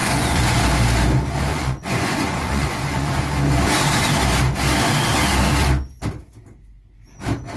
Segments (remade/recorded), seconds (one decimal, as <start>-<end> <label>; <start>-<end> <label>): 0.0-0.6 remade; 0.6-1.5 recorded; 1.5-3.2 remade; 3.2-7.6 recorded

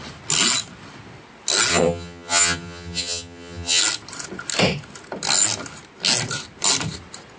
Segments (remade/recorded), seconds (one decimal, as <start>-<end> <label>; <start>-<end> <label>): 0.0-1.7 recorded; 1.7-3.8 remade; 3.8-7.4 recorded

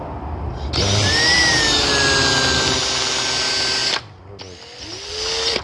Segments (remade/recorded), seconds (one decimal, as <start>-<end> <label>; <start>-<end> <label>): 0.0-5.6 recorded

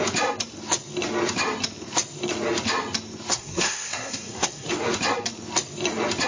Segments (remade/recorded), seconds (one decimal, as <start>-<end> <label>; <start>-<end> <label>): 0.0-3.3 recorded; 3.3-4.7 remade; 4.7-6.3 recorded

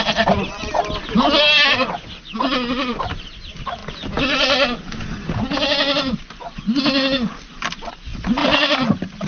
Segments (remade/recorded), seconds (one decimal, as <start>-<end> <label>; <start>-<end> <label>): 0.0-8.4 recorded; 8.4-9.3 remade

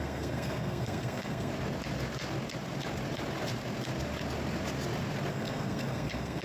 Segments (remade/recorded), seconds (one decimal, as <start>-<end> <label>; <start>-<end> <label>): 0.0-1.5 remade; 1.5-5.3 recorded; 5.3-6.4 remade

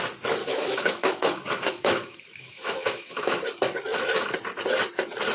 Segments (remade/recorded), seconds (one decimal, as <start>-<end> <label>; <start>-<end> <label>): 0.0-0.4 recorded; 0.4-3.4 remade; 3.4-5.3 recorded